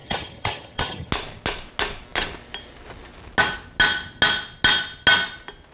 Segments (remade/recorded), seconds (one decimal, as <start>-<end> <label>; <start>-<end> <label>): 0.0-1.1 remade; 1.1-5.7 recorded